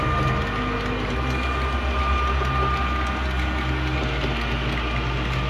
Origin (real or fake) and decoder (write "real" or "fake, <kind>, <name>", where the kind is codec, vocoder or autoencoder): real